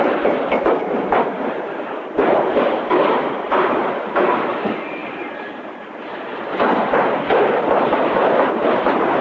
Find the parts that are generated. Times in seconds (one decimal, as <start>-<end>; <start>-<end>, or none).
5.0-7.6